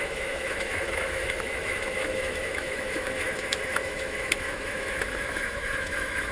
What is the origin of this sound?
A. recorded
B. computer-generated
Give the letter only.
B